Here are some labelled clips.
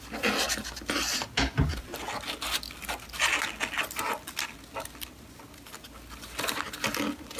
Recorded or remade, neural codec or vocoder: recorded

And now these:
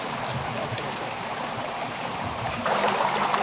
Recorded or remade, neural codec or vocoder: remade, vocoder, BigVGAN v2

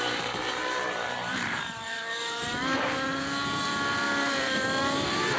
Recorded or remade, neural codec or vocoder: remade, vocoder, BigVGAN v2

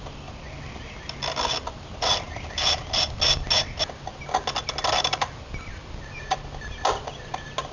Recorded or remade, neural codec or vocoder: recorded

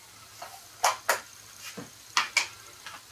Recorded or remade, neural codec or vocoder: recorded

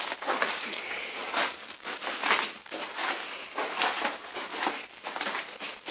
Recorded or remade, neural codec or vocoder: remade, vocoder, BigVGAN v2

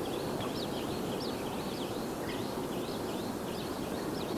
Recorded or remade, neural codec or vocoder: remade, vocoder, BigVGAN v2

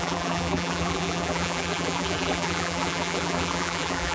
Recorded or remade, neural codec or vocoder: remade, vocoder, BigVGAN v2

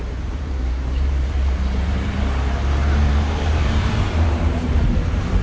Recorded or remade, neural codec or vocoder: remade, vocoder, BigVGAN v2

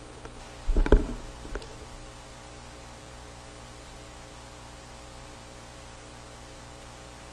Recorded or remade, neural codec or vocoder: remade, vocoder, BigVGAN v2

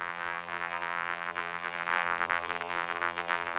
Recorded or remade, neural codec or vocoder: remade, vocoder, BigVGAN v2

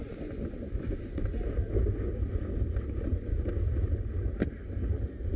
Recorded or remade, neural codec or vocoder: recorded